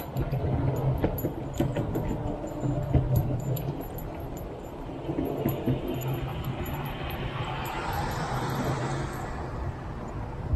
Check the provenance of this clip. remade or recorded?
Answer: recorded